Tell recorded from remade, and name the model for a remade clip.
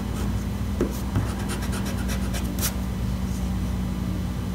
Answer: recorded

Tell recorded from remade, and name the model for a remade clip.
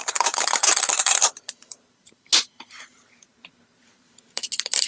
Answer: remade, vocoder, BigVGAN v2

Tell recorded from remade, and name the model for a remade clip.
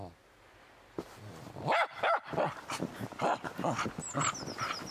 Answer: recorded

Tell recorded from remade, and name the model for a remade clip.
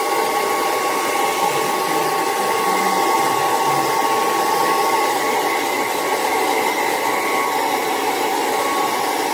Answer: recorded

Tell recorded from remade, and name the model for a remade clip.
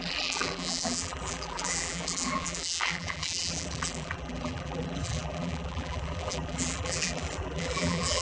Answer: remade, vocoder, BigVGAN v2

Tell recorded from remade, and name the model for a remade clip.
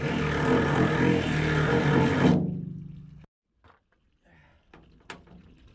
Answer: recorded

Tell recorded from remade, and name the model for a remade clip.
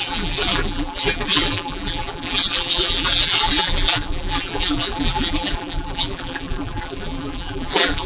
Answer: remade, vocoder, BigVGAN v2